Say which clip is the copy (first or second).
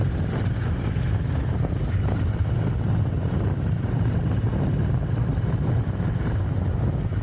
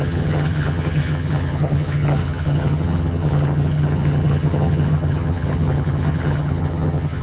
second